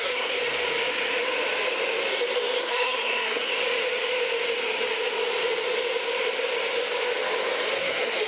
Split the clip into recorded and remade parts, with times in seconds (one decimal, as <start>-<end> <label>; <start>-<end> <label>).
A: 0.0-0.4 remade; 0.4-2.6 recorded; 2.6-3.5 remade; 3.5-7.8 recorded; 7.8-8.3 remade